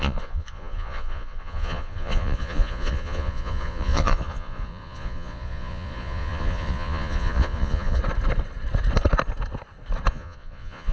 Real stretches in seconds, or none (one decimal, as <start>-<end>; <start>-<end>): 8.0-10.1